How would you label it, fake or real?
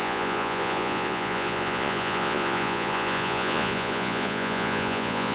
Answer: fake